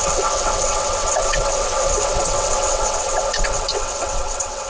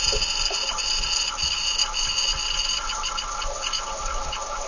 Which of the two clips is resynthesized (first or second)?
first